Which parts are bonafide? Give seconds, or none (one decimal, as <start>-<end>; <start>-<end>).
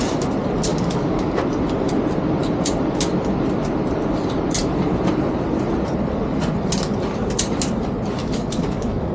0.0-0.7; 1.4-8.2